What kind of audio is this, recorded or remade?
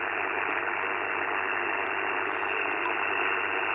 recorded